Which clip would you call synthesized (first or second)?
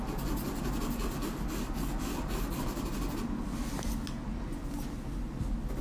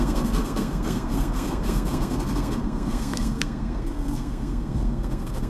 second